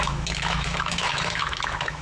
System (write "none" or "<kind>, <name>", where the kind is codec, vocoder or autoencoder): autoencoder, DAC-VAE